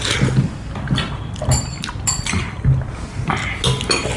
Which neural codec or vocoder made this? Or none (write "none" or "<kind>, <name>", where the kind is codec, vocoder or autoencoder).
none